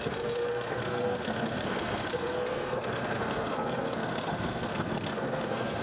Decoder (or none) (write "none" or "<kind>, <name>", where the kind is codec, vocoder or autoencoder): codec, SNAC